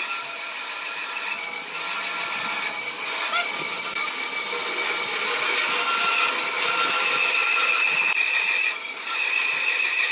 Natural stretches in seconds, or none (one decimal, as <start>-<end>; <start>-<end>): 0.0-10.1